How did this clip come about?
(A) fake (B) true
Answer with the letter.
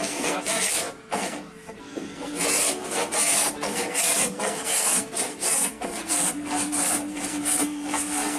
A